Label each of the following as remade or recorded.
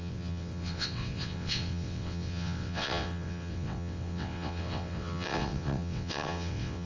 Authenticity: remade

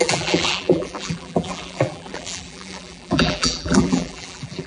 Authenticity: remade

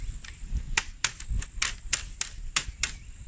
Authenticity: recorded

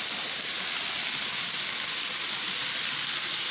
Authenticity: recorded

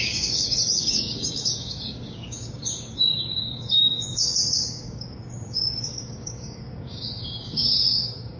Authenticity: remade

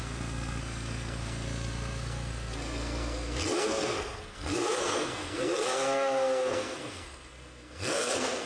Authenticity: remade